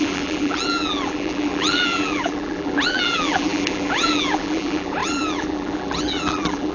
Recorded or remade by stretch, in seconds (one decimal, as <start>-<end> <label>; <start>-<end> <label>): 0.0-6.7 remade